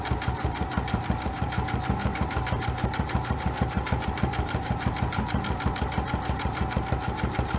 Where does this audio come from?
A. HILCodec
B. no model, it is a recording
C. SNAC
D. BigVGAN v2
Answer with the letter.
D